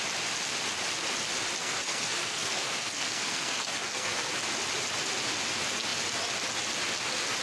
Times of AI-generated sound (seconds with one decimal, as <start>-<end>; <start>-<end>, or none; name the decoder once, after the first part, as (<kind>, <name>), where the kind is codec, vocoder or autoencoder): 1.6-4.3 (codec, SNAC)